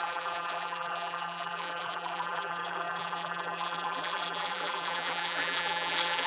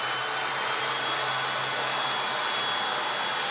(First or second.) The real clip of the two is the second